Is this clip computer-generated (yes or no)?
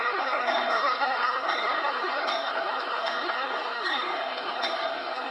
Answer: yes